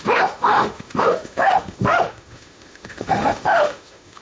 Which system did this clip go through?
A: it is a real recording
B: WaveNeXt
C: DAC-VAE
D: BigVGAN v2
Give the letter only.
C